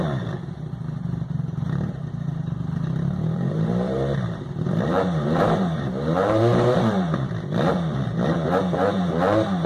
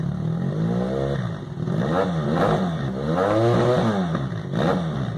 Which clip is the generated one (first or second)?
first